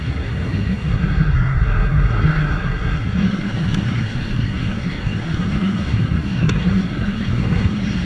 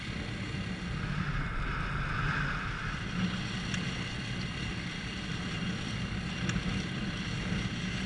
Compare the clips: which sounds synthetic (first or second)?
first